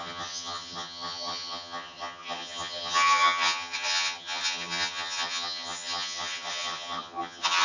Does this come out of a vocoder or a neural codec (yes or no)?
yes